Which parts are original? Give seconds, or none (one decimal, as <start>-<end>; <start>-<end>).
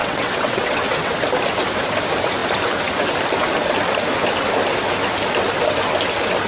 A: 1.1-6.5